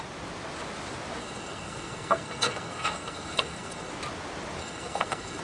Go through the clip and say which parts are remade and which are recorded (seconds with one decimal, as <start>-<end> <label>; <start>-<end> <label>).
0.0-1.2 recorded; 1.2-3.9 remade; 3.9-4.6 recorded; 4.6-5.4 remade